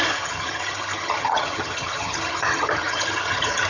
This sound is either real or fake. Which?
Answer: fake